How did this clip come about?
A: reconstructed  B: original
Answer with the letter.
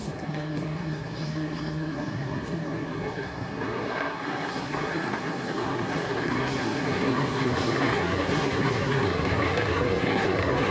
A